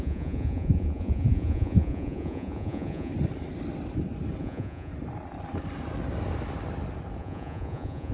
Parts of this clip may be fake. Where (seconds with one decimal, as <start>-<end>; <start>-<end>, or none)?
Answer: 0.0-3.1; 4.4-4.9; 7.2-8.1